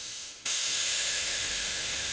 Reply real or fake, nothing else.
fake